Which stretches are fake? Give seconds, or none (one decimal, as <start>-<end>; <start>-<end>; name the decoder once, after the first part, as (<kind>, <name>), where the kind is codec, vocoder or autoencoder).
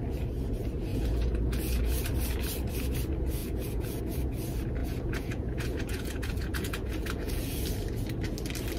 0.9-2.0 (vocoder, Vocos); 3.4-4.0; 4.8-7.6